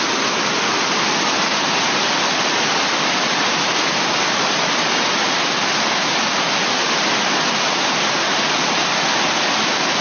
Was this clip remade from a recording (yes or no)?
no